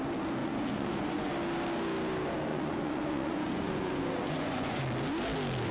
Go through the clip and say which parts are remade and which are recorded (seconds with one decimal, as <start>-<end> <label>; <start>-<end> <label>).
0.0-0.4 recorded; 0.4-1.3 remade; 1.3-2.5 recorded; 2.5-4.8 remade; 4.8-5.7 recorded